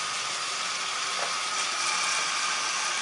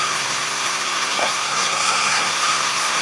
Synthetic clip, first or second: second